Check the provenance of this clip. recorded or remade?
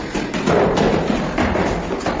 recorded